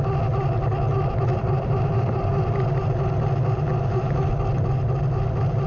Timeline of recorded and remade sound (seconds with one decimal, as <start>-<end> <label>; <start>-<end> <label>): 0.0-1.3 recorded; 1.3-2.3 remade; 2.3-3.7 recorded; 3.7-4.3 remade; 4.3-5.7 recorded